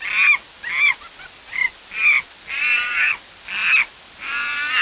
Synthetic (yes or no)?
no